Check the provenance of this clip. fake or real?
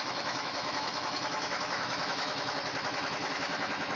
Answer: fake